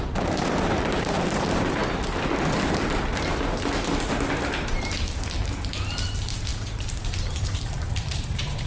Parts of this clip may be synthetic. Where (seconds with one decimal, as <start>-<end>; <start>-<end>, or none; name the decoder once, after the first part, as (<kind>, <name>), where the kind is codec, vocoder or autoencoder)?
0.0-1.8 (vocoder, BigVGAN v2); 4.7-8.7